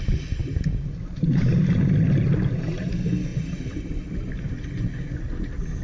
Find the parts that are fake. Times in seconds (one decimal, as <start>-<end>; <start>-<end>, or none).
3.3-4.5